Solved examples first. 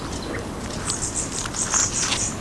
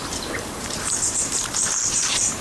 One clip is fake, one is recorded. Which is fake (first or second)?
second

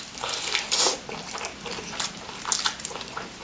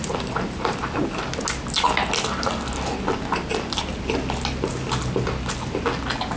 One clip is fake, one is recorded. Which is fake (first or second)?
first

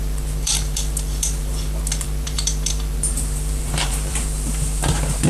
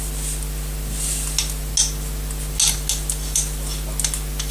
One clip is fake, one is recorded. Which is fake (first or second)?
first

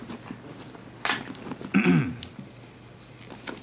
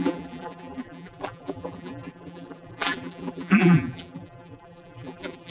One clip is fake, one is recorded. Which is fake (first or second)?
second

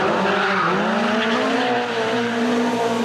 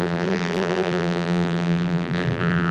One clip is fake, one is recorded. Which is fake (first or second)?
second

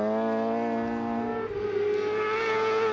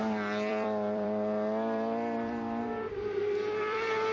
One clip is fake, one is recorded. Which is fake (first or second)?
second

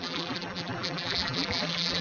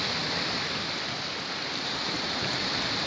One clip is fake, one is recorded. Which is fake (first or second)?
first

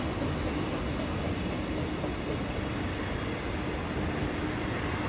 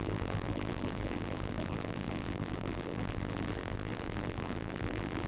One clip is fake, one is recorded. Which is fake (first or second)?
second